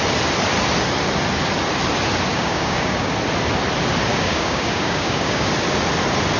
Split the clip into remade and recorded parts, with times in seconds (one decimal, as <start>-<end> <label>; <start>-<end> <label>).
0.0-2.3 recorded; 2.3-3.1 remade; 3.1-4.1 recorded; 4.1-5.5 remade; 5.5-6.4 recorded